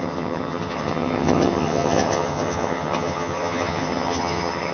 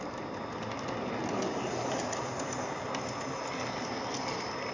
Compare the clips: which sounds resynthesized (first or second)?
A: first